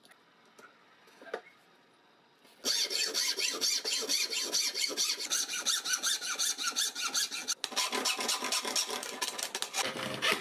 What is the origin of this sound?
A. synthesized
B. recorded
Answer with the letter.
B